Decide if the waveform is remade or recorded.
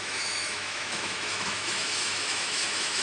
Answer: remade